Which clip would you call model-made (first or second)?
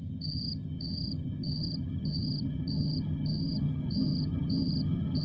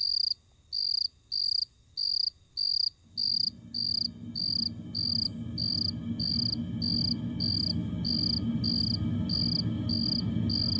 first